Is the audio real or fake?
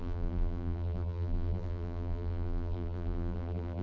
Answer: fake